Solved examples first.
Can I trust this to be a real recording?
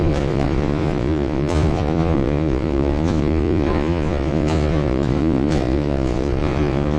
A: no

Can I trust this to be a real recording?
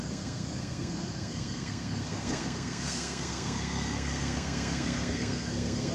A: no